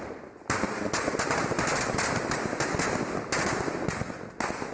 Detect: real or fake real